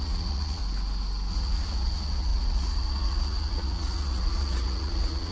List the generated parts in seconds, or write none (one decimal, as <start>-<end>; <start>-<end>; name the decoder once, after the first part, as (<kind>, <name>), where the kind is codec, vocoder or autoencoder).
0.0-0.6 (vocoder, Vocos); 1.3-5.3